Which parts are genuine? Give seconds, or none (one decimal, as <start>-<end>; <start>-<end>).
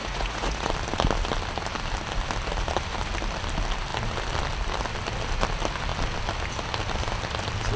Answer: 0.7-7.8